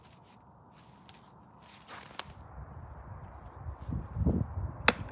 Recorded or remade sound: recorded